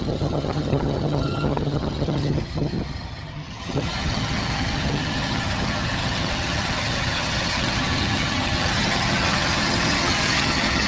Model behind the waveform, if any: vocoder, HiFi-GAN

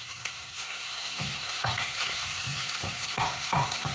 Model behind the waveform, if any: codec, SNAC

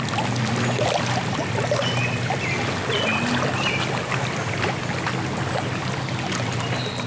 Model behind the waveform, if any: none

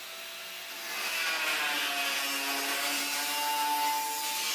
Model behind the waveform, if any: none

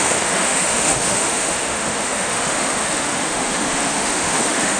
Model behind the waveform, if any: autoencoder, DAC-VAE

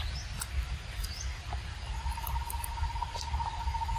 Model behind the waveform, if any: none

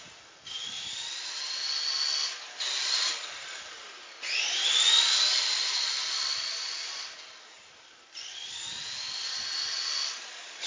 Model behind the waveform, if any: none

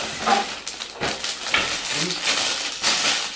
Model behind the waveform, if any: none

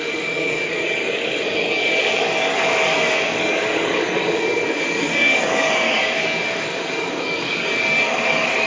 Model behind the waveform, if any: codec, DAC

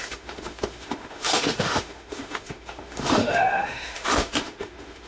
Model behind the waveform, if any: autoencoder, DAC-VAE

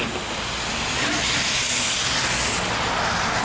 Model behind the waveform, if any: none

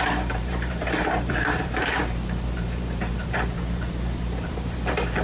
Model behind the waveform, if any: vocoder, BigVGAN v2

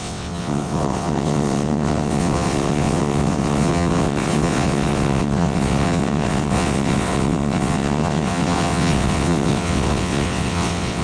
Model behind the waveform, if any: vocoder, WaveNeXt